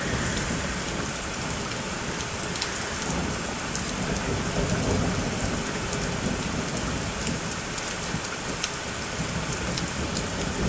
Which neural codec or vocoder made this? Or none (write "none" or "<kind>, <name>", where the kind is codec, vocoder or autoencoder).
none